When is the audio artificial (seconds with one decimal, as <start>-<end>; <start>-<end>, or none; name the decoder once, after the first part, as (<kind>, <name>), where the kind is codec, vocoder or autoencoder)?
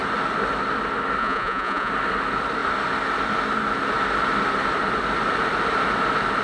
1.2-1.9 (vocoder, Vocos)